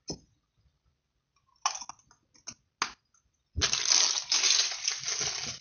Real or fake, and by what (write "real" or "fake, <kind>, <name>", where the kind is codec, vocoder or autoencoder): real